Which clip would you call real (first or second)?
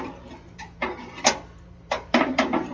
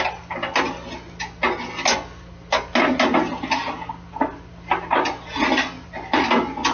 second